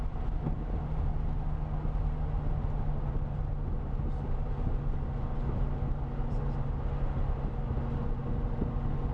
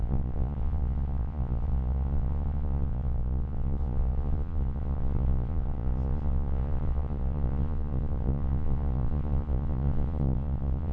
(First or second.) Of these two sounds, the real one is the first